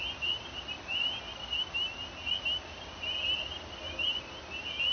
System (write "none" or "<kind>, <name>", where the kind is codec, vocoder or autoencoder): none